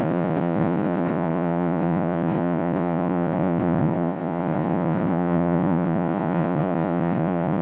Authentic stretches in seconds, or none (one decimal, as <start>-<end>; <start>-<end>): none